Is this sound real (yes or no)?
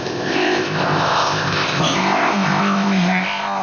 no